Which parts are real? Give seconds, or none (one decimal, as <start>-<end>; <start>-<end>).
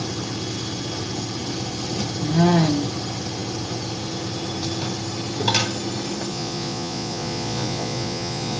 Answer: 0.0-6.3